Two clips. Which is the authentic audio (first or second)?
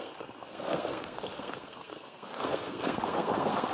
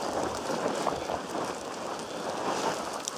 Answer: second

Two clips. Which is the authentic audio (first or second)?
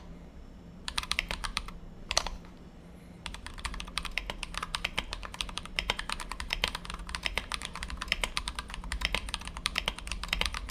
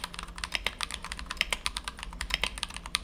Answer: second